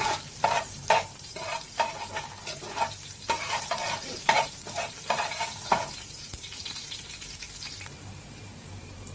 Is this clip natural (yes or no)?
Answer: no